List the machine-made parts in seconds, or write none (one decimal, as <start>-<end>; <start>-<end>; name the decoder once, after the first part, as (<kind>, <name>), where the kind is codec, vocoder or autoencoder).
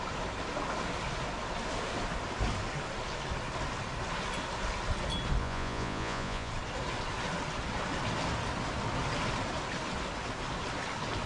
5.4-6.5 (vocoder, Vocos)